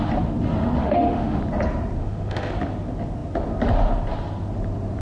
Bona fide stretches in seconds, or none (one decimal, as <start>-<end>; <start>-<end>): 0.0-0.8; 1.4-2.0; 2.5-5.0